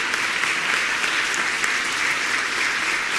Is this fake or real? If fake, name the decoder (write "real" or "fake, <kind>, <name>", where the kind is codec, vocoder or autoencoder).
real